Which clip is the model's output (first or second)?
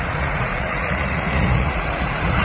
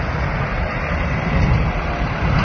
first